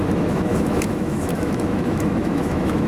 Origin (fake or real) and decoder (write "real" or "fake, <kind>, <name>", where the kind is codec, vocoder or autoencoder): fake, autoencoder, DAC-VAE